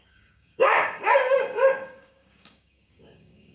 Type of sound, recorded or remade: remade